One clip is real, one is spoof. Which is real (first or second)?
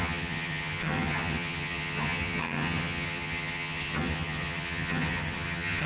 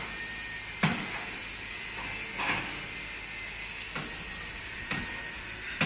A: second